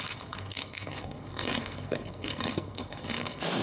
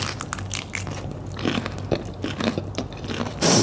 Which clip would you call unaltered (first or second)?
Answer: second